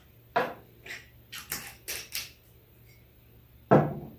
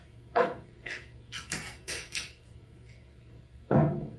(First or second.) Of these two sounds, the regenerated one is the second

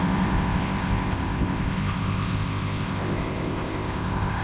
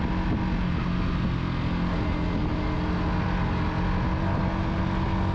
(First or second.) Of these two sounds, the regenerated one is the first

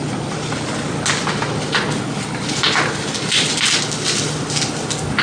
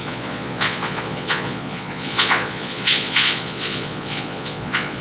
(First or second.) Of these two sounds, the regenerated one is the second